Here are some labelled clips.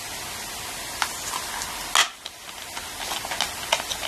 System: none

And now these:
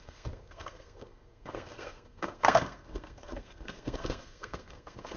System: codec, SNAC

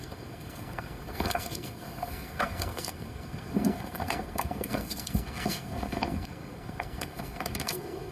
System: codec, SNAC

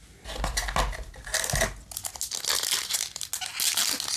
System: none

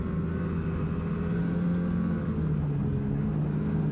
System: none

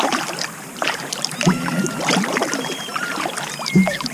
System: vocoder, BigVGAN v2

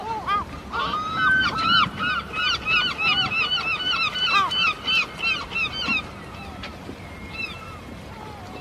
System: none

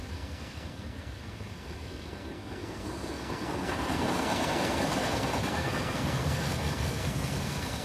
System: codec, SNAC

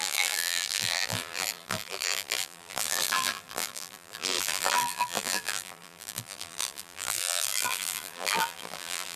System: vocoder, BigVGAN v2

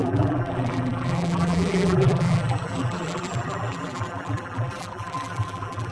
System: vocoder, BigVGAN v2